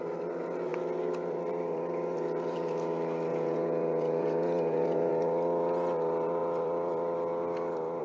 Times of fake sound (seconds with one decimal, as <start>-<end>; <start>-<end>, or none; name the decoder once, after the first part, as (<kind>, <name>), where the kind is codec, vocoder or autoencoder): 3.3-5.1 (vocoder, Vocos)